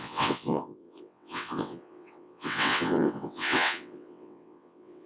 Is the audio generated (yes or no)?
yes